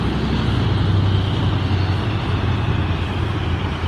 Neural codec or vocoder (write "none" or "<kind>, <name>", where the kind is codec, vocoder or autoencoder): none